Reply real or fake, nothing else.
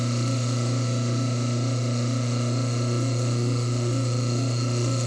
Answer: fake